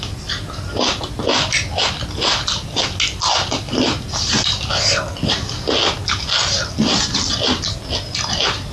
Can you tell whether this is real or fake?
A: real